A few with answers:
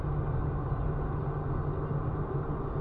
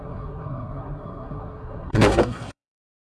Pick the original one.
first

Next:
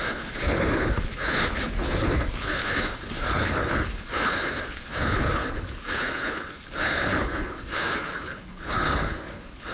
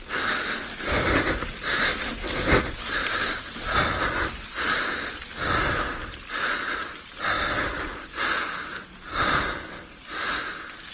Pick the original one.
second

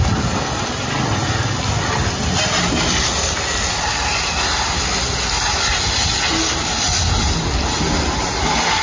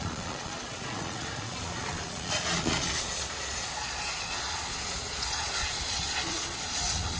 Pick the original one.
first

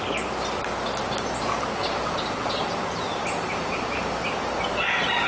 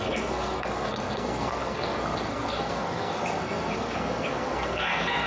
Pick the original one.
first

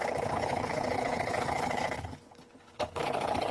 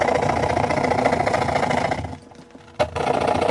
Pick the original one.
second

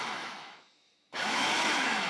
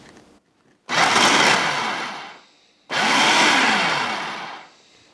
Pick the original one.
second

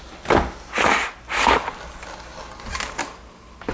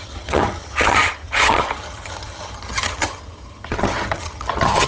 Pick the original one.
first